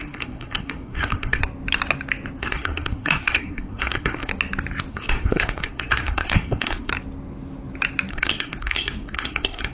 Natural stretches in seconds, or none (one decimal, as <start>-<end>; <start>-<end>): 1.4-2.4; 4.3-4.9; 6.9-8.1